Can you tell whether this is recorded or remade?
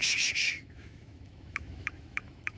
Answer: remade